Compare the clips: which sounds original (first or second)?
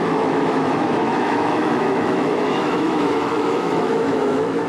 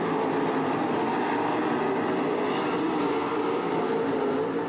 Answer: second